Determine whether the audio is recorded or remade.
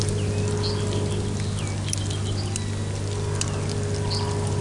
recorded